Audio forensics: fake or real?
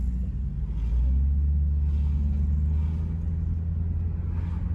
real